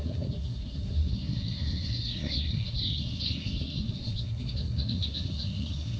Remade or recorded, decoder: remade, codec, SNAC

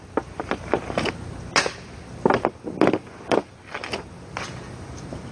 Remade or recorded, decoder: recorded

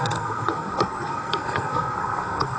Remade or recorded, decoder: remade, codec, SNAC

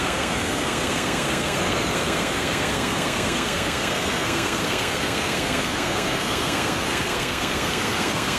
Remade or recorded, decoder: remade, codec, SNAC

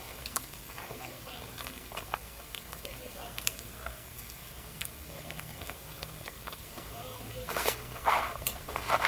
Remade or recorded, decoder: remade, codec, SNAC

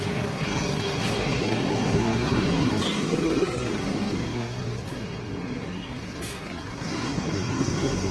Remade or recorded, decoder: remade, codec, SNAC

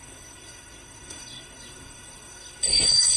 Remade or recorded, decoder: remade, codec, SNAC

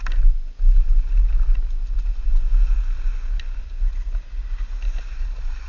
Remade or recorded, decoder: recorded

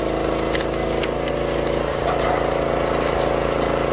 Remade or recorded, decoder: recorded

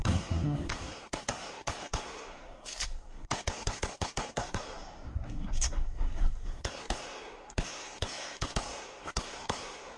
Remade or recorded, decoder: remade, codec, SNAC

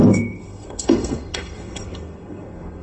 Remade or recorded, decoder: remade, codec, SNAC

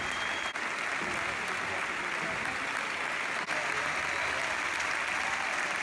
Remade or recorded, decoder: recorded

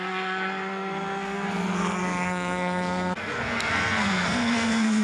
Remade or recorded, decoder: remade, codec, SNAC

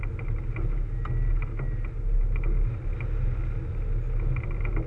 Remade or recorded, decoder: recorded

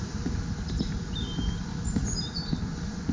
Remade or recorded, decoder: recorded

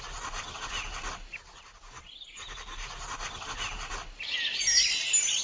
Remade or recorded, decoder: recorded